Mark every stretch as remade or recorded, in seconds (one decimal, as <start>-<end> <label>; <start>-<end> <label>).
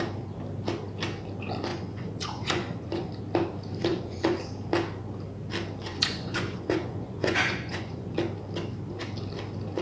0.0-1.7 recorded; 1.7-3.1 remade; 3.1-3.9 recorded; 3.9-4.4 remade; 4.4-5.9 recorded; 5.9-8.1 remade; 8.1-9.8 recorded